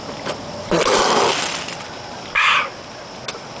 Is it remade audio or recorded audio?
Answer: recorded